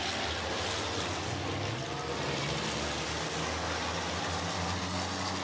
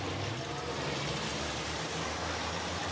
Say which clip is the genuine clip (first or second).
first